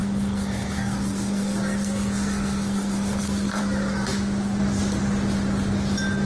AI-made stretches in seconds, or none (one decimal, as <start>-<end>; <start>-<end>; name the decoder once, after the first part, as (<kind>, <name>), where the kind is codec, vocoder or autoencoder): 0.0-3.6 (codec, SNAC)